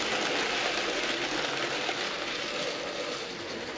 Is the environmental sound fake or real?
real